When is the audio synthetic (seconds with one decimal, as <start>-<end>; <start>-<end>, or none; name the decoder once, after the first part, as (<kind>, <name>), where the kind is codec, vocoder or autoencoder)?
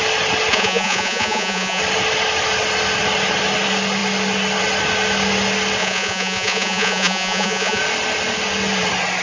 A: 0.5-1.8 (vocoder, Vocos); 5.8-7.8